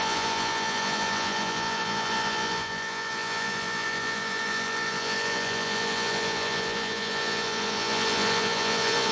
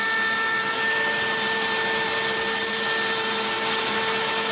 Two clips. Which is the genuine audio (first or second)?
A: second